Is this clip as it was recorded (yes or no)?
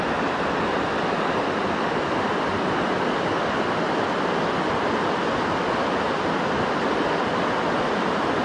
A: yes